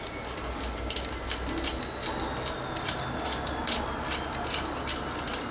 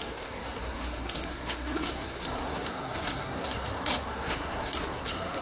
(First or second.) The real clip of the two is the first